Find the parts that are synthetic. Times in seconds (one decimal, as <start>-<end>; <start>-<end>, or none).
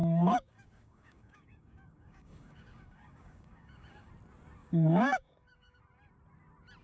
0.0-4.1; 4.6-5.8